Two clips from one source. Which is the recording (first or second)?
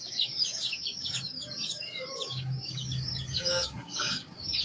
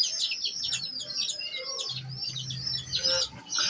second